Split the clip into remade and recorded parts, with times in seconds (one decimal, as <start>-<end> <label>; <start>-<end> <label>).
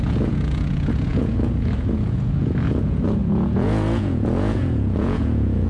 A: 0.0-5.7 remade